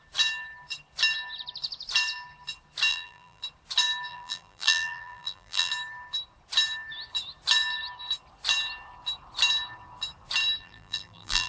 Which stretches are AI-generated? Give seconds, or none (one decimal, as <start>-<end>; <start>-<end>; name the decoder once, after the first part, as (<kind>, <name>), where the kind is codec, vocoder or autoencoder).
2.9-3.4 (vocoder, BigVGAN v2); 4.1-5.7; 10.6-11.5